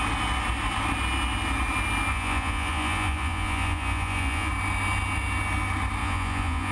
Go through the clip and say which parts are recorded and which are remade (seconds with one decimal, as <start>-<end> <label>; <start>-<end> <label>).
0.0-2.1 recorded; 2.1-4.5 remade; 4.5-6.0 recorded; 6.0-6.7 remade